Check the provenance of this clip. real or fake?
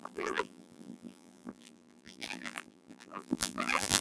fake